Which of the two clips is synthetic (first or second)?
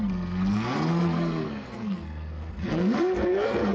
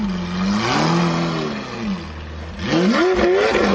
first